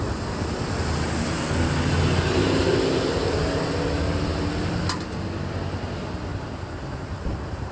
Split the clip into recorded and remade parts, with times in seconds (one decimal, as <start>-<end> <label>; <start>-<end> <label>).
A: 0.0-2.4 recorded; 2.4-3.1 remade; 3.1-6.3 recorded; 6.3-7.7 remade